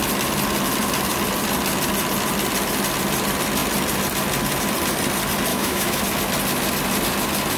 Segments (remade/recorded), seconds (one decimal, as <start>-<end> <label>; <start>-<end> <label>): 0.0-5.5 recorded; 5.5-6.0 remade; 6.0-7.6 recorded